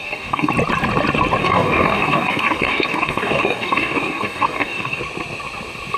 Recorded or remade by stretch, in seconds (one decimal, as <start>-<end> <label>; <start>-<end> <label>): 0.0-0.5 remade; 0.5-1.4 recorded; 1.4-5.0 remade; 5.0-6.0 recorded